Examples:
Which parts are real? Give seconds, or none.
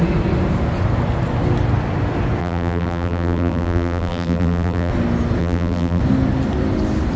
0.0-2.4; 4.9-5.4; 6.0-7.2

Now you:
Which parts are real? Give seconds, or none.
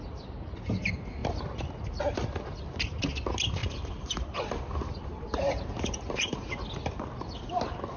0.0-3.6; 6.5-8.0